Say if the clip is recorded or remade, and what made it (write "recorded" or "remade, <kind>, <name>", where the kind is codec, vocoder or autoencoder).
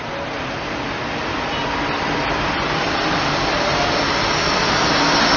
recorded